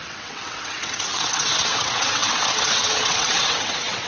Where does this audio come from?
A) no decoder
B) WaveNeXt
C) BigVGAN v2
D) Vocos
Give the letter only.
B